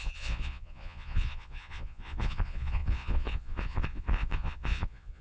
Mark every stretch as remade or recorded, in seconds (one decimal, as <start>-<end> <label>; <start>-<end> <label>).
0.0-5.2 remade